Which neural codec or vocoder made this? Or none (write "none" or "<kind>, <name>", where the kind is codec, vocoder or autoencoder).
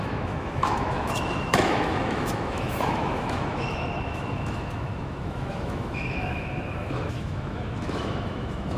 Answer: autoencoder, DAC-VAE